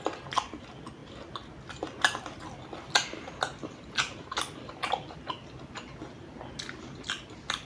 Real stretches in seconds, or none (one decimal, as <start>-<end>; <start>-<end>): 0.0-7.7